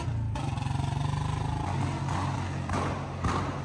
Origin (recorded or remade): recorded